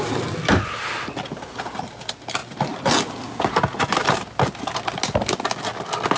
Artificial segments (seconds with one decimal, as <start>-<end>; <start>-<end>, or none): none